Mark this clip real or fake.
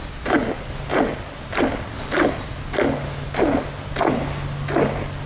real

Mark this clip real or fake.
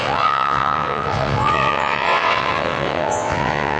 fake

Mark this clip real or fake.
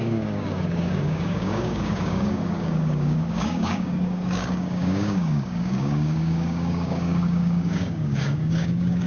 fake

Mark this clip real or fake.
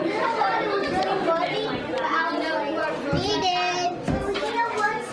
real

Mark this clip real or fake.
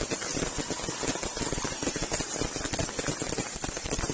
real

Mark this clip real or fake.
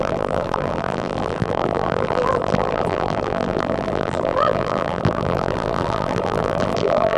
fake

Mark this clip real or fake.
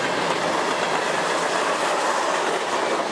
real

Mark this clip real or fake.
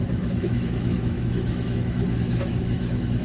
fake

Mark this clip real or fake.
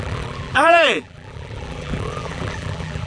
fake